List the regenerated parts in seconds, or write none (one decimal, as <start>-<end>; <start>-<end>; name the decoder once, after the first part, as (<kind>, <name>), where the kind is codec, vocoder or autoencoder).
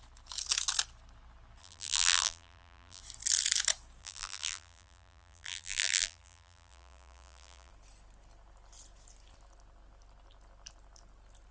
1.6-3.0 (vocoder, BigVGAN v2); 4.0-7.7